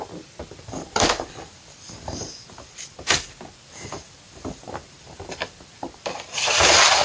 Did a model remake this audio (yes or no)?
yes